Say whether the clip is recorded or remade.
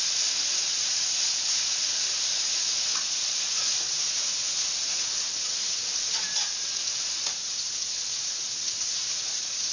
remade